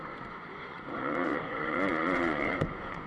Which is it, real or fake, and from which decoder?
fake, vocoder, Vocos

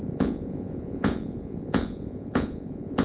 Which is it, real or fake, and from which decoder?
fake, vocoder, Vocos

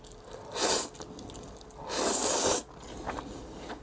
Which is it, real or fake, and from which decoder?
real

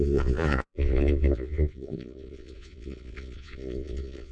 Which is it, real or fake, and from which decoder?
fake, vocoder, Vocos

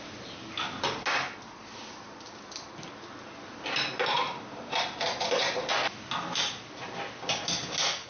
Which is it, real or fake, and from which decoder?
real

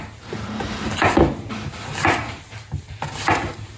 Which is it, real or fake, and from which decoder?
real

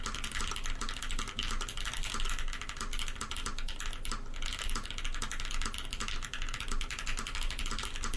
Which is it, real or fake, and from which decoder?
real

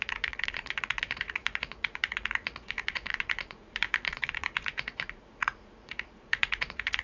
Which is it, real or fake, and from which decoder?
fake, vocoder, Vocos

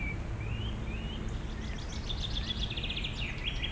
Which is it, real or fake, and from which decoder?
real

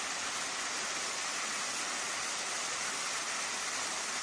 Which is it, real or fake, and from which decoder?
real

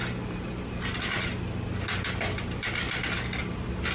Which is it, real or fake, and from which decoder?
real